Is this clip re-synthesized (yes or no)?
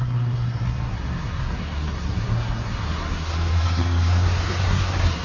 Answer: yes